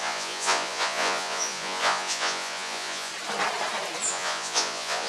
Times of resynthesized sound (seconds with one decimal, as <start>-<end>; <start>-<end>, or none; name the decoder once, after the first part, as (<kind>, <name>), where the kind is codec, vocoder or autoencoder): 0.0-3.1 (vocoder, Vocos); 4.1-5.1